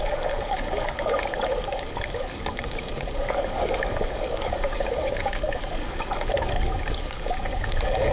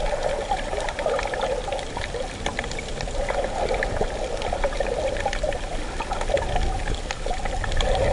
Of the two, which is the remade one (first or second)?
first